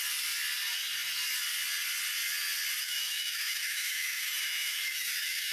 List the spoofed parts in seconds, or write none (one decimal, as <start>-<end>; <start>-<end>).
2.8-5.5